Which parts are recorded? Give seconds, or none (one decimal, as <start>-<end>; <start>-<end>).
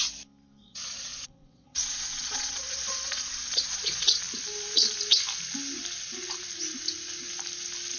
0.0-0.6; 4.2-8.0